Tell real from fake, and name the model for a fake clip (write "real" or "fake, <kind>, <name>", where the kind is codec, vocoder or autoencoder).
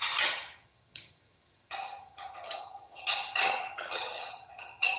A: fake, vocoder, HiFi-GAN